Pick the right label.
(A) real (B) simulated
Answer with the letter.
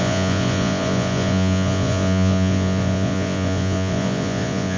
B